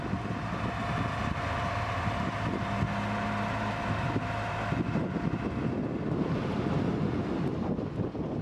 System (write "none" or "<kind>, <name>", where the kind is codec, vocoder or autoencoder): none